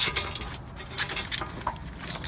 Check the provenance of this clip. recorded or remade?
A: recorded